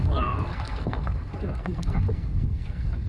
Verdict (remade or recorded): remade